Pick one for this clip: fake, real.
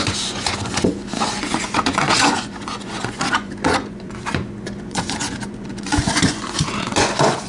fake